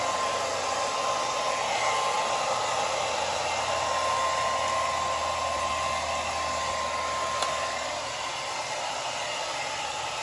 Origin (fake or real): real